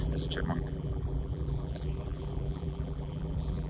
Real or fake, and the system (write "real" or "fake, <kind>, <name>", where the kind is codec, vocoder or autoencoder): fake, vocoder, BigVGAN v2